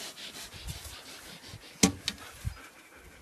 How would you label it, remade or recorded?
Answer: recorded